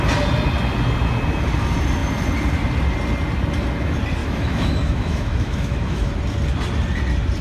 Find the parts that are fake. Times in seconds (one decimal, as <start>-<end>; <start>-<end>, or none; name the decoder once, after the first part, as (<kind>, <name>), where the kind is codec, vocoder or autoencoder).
4.2-6.1 (autoencoder, DAC-VAE)